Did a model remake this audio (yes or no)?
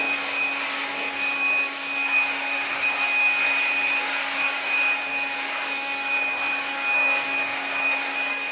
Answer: yes